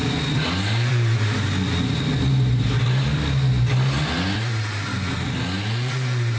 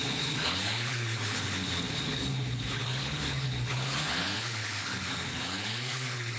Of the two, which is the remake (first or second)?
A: second